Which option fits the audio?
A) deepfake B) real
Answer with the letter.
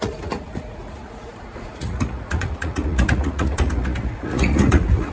A